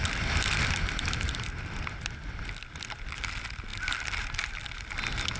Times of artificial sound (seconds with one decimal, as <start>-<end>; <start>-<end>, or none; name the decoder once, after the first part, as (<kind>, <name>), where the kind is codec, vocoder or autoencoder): 0.0-3.2 (vocoder, BigVGAN v2); 3.7-4.8